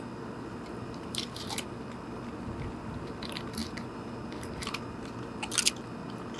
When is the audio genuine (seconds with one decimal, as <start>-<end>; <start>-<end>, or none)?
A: 0.0-6.4